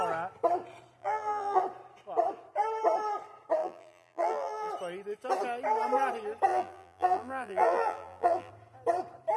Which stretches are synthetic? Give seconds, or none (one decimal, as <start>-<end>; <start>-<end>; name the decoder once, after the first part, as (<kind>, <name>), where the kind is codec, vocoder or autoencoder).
1.0-1.6 (vocoder, BigVGAN v2); 3.6-4.7; 6.5-8.5